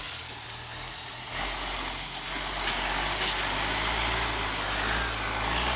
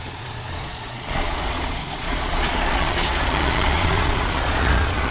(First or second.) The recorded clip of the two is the first